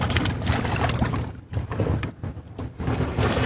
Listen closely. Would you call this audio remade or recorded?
recorded